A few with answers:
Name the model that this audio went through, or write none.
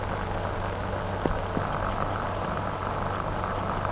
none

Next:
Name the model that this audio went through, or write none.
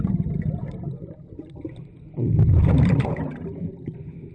none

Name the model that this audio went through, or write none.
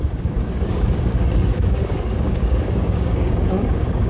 codec, DAC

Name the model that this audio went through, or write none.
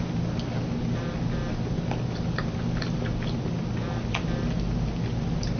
none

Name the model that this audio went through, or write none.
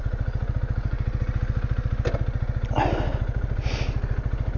none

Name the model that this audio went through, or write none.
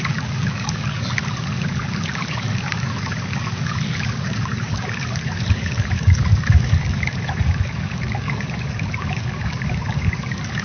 codec, DAC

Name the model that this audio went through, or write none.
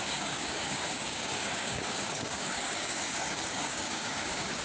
codec, DAC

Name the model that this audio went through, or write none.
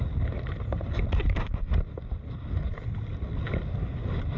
none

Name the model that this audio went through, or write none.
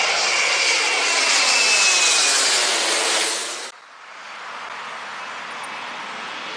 none